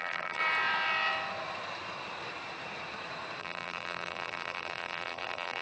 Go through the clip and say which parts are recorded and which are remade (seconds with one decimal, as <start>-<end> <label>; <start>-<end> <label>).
0.0-0.4 remade; 0.4-3.4 recorded; 3.4-5.6 remade